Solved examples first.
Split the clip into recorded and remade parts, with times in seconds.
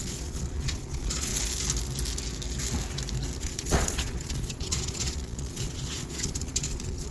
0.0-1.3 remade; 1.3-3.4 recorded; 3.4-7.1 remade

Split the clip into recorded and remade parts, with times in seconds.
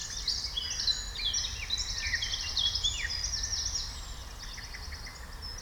0.0-5.6 recorded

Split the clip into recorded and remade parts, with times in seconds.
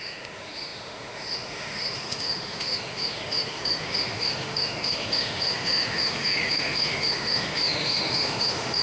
0.0-8.8 remade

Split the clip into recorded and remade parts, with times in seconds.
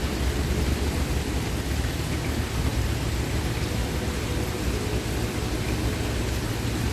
0.0-6.9 recorded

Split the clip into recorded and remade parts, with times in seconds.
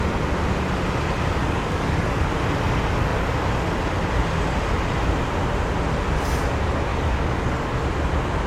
0.0-1.4 recorded; 1.4-2.3 remade; 2.3-6.9 recorded; 6.9-7.8 remade; 7.8-8.5 recorded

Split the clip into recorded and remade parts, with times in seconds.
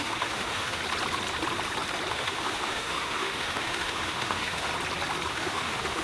0.0-0.8 remade; 0.8-2.1 recorded; 2.1-4.7 remade; 4.7-5.3 recorded; 5.3-6.0 remade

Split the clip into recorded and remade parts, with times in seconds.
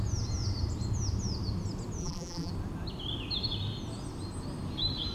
0.0-2.0 recorded; 2.0-2.5 remade; 2.5-5.1 recorded